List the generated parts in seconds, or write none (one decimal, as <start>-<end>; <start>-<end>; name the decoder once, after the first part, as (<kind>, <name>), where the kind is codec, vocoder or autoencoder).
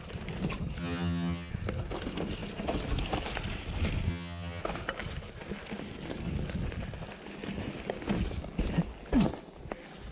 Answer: 0.8-1.5 (vocoder, HiFi-GAN); 4.1-4.6